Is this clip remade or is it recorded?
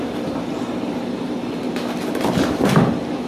recorded